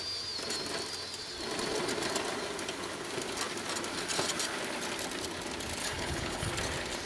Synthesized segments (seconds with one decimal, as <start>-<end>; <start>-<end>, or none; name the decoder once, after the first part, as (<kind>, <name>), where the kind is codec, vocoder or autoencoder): 5.8-6.5 (codec, HILCodec)

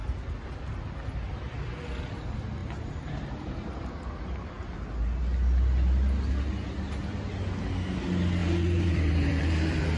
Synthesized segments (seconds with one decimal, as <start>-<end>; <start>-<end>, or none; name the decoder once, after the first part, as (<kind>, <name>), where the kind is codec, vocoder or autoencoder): 2.6-4.5 (vocoder, BigVGAN v2); 8.4-10.0